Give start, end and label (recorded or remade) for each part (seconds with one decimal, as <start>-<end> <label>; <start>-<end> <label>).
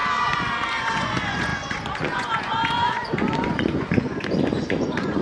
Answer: 0.0-0.8 recorded; 0.8-5.2 remade